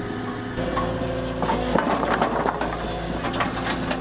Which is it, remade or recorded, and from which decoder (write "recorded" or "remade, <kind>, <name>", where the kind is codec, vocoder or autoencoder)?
recorded